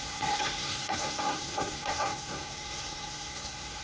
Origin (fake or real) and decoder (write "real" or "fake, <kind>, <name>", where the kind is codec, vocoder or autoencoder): fake, codec, SNAC